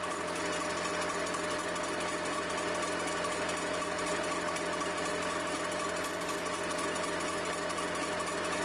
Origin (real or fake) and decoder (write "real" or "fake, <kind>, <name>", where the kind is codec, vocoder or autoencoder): real